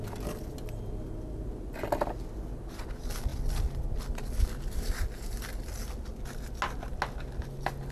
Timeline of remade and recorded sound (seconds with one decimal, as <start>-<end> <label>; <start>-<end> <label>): 0.0-7.9 recorded